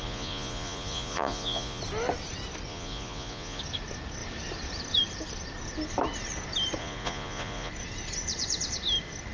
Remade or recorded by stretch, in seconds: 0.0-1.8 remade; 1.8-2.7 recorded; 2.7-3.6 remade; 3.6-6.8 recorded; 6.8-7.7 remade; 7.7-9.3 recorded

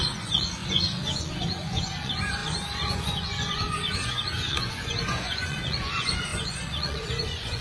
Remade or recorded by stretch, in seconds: 0.0-7.6 remade

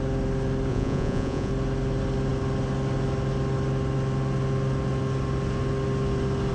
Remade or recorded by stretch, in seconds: 0.0-0.7 recorded; 0.7-1.5 remade; 1.5-6.5 recorded

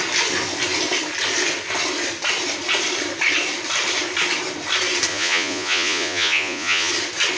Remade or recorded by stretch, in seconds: 0.0-5.1 recorded; 5.1-6.9 remade; 6.9-7.4 recorded

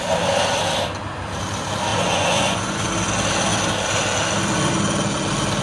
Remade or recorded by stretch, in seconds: 0.0-1.9 recorded; 1.9-2.9 remade; 2.9-5.6 recorded

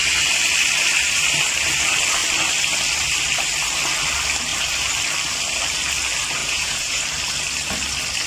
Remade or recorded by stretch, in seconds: 0.0-6.4 recorded; 6.4-7.0 remade; 7.0-8.3 recorded

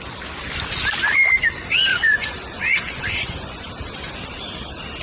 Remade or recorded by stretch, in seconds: 0.0-1.9 recorded; 1.9-3.7 remade; 3.7-5.0 recorded

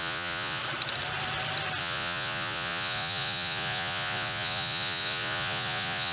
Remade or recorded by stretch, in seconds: 0.0-0.6 remade; 0.6-1.8 recorded; 1.8-6.1 remade